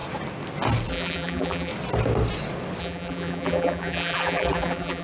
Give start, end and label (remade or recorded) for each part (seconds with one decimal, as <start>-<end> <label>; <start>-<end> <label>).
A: 0.0-0.9 recorded; 0.9-1.7 remade; 1.7-2.8 recorded; 2.8-5.0 remade